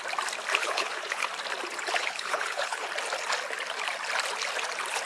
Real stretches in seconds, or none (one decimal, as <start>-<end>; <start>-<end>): 0.0-0.6; 1.3-2.0; 2.9-5.1